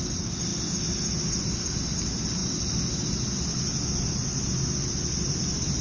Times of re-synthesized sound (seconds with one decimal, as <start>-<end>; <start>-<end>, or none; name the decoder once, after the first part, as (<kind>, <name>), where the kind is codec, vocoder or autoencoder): none